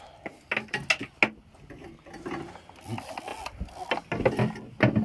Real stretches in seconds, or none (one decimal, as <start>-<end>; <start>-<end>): 0.0-5.0